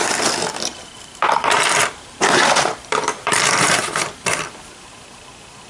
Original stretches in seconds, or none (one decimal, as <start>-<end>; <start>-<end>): 0.0-0.7; 4.1-5.7